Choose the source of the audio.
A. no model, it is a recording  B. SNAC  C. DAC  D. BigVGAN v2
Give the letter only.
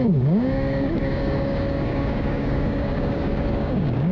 C